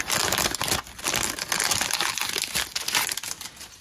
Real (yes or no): yes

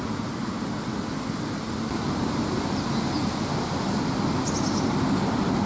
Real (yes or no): yes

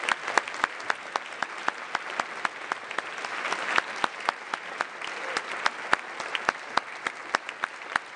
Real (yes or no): yes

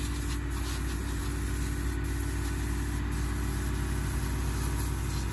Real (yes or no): yes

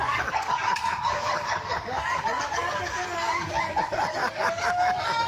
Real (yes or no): no